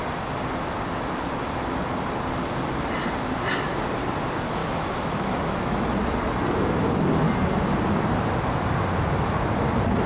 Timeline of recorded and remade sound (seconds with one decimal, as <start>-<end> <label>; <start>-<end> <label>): 0.0-4.6 recorded; 4.6-5.8 remade; 5.8-10.1 recorded